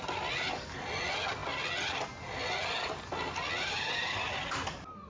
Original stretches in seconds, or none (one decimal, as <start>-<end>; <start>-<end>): 0.0-5.1